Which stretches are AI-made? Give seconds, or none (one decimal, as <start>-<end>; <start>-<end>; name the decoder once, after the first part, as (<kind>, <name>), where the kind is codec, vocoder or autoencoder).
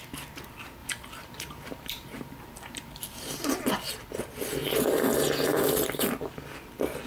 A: 0.8-3.5 (vocoder, BigVGAN v2)